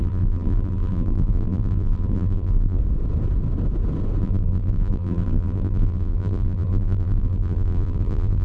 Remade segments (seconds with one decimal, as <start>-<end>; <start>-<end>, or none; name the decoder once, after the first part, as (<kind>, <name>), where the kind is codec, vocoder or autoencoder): 0.0-2.8 (vocoder, BigVGAN v2); 4.2-8.4